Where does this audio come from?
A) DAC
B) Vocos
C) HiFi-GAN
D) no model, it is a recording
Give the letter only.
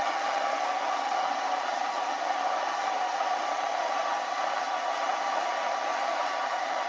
C